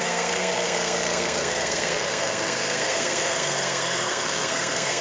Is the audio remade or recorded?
remade